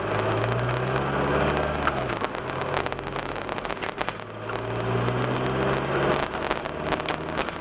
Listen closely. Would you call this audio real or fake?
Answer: real